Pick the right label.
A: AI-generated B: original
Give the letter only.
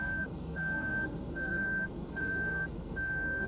A